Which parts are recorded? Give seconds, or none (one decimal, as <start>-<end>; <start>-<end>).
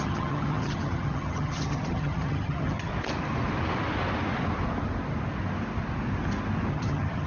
2.9-6.7